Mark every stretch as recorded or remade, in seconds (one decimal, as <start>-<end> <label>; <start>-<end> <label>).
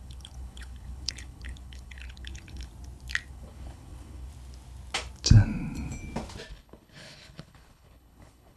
0.0-2.7 remade; 2.7-3.3 recorded; 3.3-4.3 remade; 4.3-6.5 recorded; 6.5-8.6 remade